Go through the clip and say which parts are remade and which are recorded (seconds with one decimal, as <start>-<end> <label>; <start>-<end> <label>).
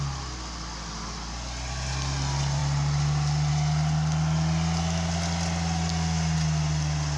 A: 0.0-7.2 recorded